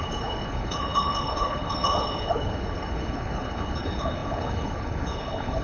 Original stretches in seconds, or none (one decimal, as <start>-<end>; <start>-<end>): none